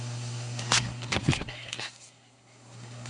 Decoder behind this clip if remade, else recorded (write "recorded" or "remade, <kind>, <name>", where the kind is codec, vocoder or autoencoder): remade, codec, SNAC